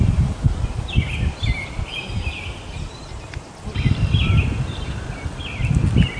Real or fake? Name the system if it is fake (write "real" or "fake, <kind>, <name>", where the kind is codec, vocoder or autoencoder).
real